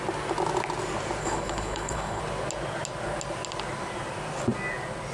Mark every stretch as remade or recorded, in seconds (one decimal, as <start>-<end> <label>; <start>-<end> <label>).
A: 0.0-1.2 recorded; 1.2-2.2 remade; 2.2-5.1 recorded